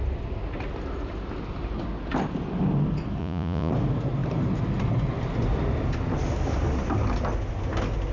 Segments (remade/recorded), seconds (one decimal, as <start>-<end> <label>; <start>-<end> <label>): 0.0-3.2 recorded; 3.2-3.7 remade; 3.7-8.1 recorded